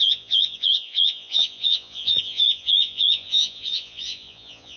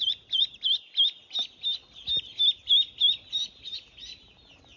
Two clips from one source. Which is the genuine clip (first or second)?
second